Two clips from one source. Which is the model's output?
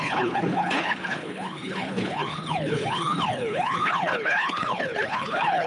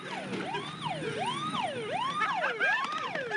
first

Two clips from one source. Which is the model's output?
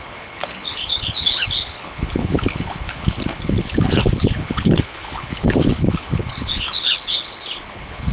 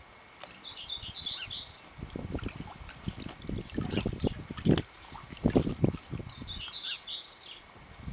first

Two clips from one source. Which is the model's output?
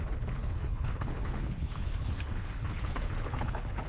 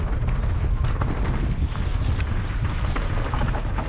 first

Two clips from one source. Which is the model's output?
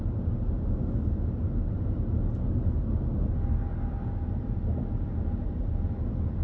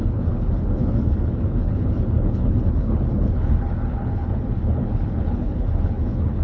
second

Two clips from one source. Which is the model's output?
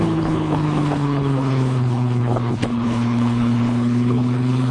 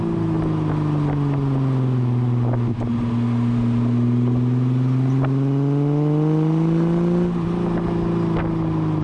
first